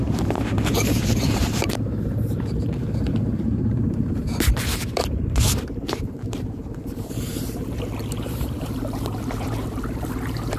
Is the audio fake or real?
fake